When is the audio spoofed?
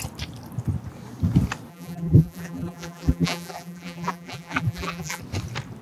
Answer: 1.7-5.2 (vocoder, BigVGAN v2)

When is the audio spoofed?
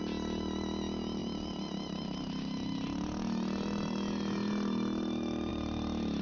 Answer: none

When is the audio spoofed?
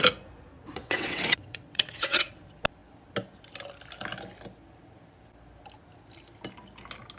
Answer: 0.5-2.3 (vocoder, WaveNeXt)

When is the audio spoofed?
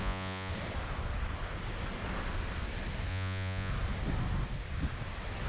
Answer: 0.0-0.5 (vocoder, Vocos); 3.1-3.7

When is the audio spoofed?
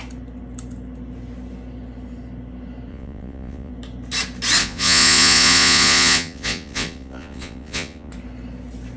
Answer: 2.9-3.7 (vocoder, Vocos); 4.6-8.1